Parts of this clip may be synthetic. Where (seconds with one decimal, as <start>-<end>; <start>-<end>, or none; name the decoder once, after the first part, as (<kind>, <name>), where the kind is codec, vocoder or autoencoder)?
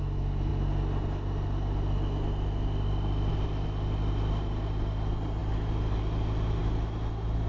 none